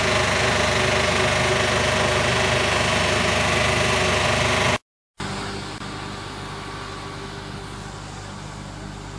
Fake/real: real